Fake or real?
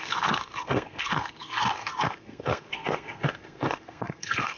fake